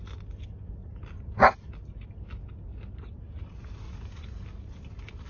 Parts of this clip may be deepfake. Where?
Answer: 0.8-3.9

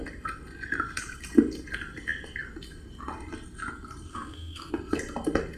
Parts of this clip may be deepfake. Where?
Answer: 4.1-4.7

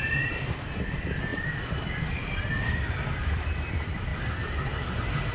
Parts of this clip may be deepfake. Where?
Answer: none

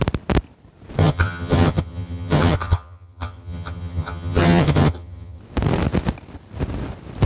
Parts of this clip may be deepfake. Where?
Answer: 1.0-5.4

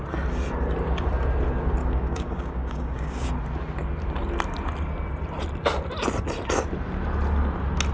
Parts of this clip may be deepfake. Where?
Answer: 1.8-3.3

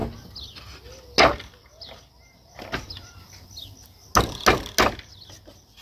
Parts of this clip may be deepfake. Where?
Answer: none

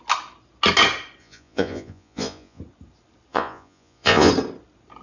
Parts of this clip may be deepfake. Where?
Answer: 1.2-2.6; 3.3-4.3

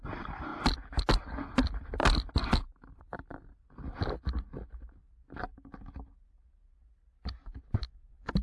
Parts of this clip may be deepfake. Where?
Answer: none